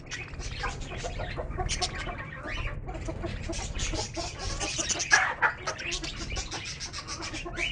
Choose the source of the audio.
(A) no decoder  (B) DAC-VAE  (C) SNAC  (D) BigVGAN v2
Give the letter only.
A